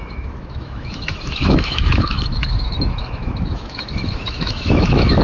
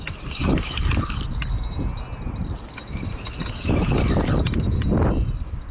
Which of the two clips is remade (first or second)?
first